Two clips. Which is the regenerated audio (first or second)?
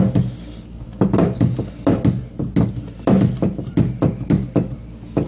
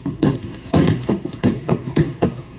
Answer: second